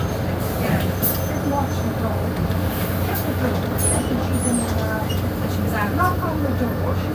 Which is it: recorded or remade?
recorded